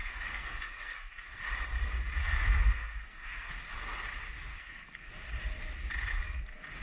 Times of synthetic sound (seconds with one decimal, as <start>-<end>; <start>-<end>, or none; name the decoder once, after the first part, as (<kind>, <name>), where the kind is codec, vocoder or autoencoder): 0.0-1.4 (codec, SNAC); 2.2-3.5; 4.5-5.1